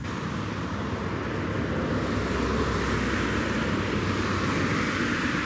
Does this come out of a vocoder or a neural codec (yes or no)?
no